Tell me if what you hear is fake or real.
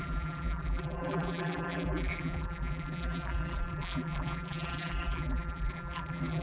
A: fake